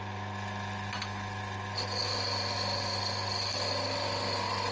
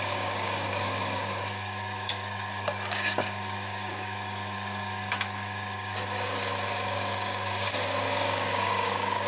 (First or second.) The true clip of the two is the first